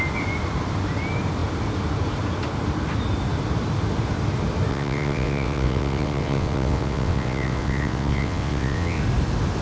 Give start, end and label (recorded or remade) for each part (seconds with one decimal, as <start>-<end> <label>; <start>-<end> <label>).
0.0-4.7 recorded; 4.7-9.0 remade; 9.0-9.6 recorded